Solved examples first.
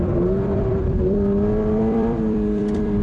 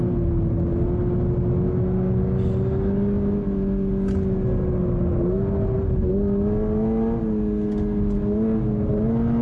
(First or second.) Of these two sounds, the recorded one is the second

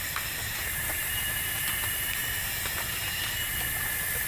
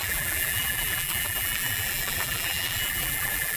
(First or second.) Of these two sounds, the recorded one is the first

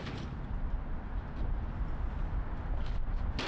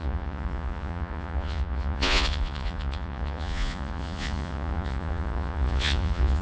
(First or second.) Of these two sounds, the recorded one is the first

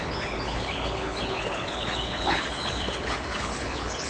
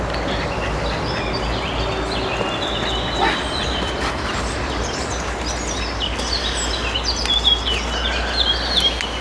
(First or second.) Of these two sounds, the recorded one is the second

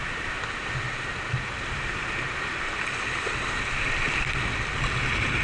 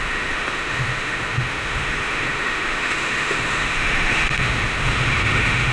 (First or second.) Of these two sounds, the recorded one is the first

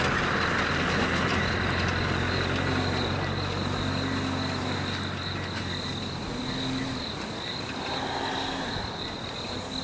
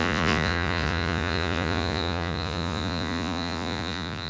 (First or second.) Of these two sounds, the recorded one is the first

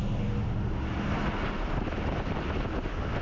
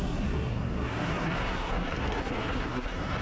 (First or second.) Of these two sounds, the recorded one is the first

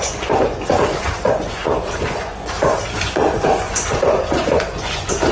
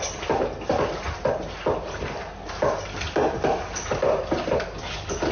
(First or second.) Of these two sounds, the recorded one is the second